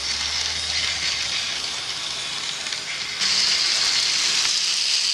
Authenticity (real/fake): real